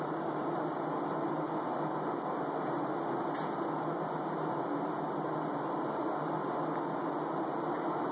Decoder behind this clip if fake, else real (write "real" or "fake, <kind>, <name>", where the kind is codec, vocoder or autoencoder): real